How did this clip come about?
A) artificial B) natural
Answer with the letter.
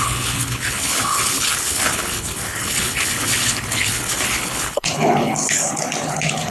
A